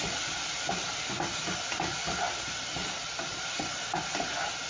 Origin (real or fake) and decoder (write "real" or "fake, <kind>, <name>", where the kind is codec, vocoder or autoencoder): real